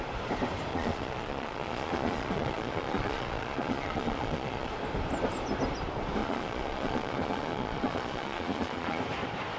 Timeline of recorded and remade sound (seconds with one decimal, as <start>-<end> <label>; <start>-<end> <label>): 0.0-0.7 recorded; 0.7-4.7 remade; 4.7-6.2 recorded; 6.2-9.0 remade; 9.0-9.6 recorded